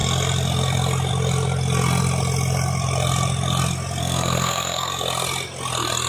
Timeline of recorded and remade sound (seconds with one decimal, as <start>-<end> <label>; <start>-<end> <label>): 0.0-4.0 recorded; 4.0-4.9 remade; 4.9-6.1 recorded